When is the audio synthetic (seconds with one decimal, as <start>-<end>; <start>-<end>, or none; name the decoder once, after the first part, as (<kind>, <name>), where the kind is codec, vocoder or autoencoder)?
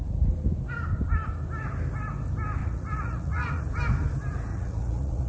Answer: 2.6-3.6 (vocoder, Vocos); 4.5-5.3